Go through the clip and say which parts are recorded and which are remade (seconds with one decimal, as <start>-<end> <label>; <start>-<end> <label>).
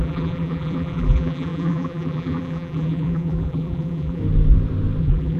0.0-4.2 remade; 4.2-5.0 recorded; 5.0-5.4 remade